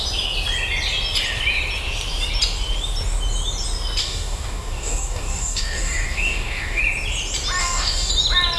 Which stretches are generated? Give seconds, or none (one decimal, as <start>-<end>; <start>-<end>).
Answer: 4.0-6.8; 7.6-8.1